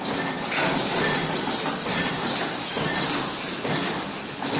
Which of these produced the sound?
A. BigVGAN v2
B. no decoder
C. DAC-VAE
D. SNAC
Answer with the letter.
B